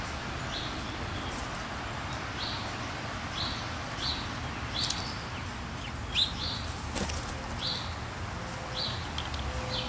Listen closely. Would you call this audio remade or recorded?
recorded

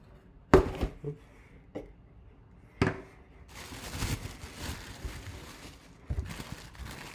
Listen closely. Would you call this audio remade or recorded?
recorded